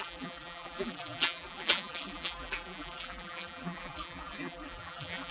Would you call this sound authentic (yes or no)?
no